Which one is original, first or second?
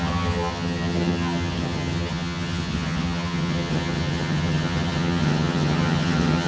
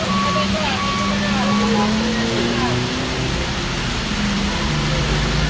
second